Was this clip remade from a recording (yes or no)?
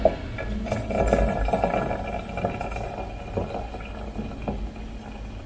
no